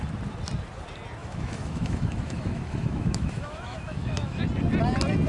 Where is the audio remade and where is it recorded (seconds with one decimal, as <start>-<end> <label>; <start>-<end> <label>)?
0.0-1.2 recorded; 1.2-4.4 remade; 4.4-5.3 recorded